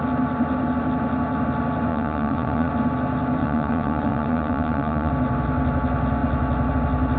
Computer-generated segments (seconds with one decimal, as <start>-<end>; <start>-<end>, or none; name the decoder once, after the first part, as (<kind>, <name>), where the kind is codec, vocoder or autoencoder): 1.9-2.7 (vocoder, WaveNeXt); 3.4-5.1